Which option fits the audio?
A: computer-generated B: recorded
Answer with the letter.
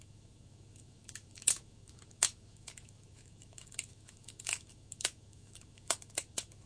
A